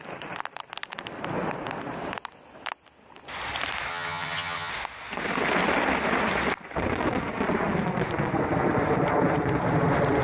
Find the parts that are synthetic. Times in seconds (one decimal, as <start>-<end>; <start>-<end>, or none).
3.9-4.7